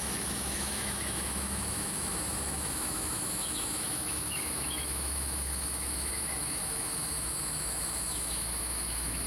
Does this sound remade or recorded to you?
remade